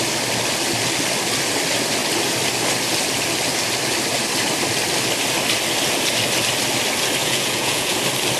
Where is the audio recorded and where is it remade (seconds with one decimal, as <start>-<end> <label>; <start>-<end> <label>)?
0.0-7.2 recorded; 7.2-8.0 remade; 8.0-8.4 recorded